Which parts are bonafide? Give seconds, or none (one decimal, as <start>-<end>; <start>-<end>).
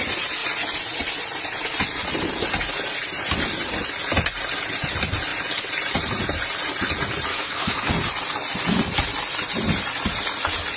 0.0-7.3; 7.9-10.8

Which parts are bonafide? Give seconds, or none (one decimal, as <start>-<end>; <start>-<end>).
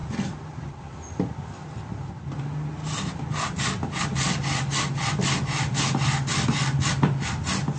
0.0-7.8